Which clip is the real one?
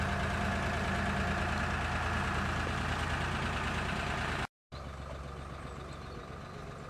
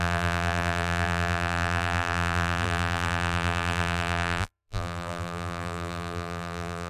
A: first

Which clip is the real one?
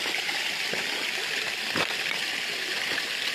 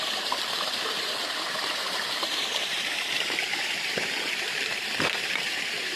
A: first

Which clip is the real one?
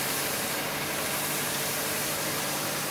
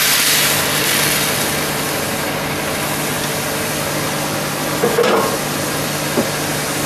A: second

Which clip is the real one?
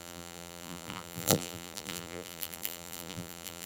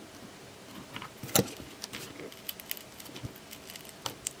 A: second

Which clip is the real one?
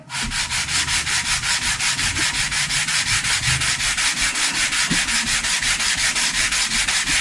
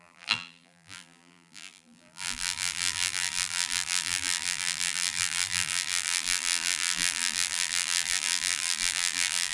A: first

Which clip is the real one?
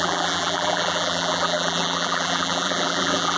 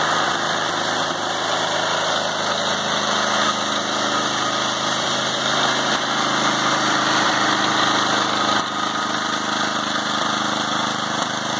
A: second